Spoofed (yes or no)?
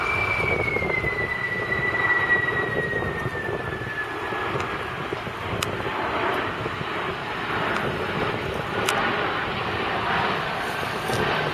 no